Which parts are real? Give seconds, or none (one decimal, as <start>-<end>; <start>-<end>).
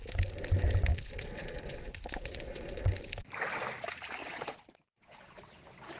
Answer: 0.0-0.9; 2.9-4.2; 5.4-6.0